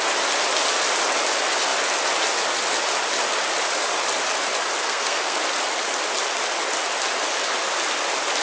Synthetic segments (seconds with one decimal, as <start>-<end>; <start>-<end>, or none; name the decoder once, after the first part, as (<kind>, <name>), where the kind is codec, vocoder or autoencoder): 4.8-5.4 (codec, SNAC)